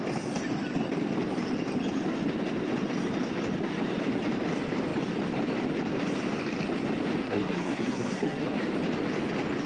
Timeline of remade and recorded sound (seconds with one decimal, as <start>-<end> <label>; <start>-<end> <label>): 0.0-7.2 recorded; 7.2-8.6 remade; 8.6-9.7 recorded